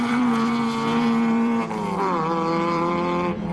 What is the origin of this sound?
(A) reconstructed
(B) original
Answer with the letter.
A